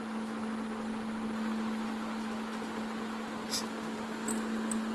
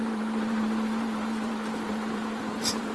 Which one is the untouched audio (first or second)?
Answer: first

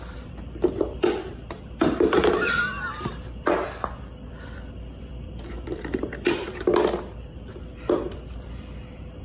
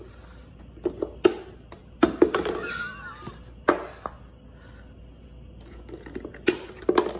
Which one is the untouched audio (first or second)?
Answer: second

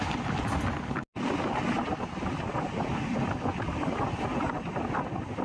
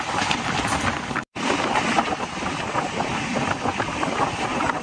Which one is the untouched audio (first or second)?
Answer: first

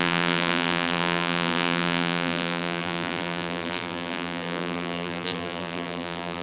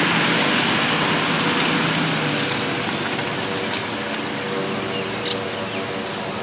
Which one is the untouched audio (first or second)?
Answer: second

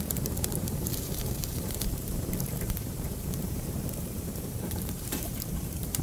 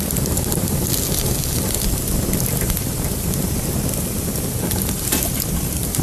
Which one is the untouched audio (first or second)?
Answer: second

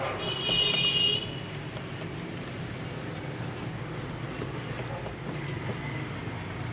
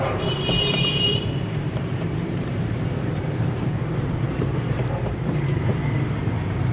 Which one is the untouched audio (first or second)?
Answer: first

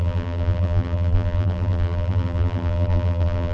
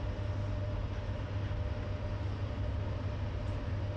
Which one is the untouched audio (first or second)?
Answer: second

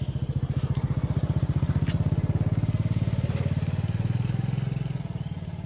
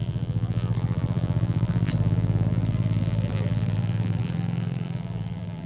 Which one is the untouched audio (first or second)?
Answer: first